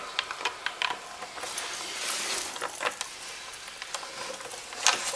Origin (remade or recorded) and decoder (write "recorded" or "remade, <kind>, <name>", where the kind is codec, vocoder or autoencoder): recorded